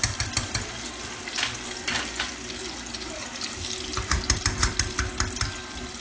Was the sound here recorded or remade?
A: recorded